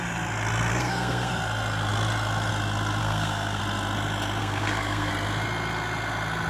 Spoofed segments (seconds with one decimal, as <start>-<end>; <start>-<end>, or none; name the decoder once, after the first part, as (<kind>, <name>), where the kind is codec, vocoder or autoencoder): 0.7-1.3 (codec, SNAC); 3.0-3.6; 4.4-5.1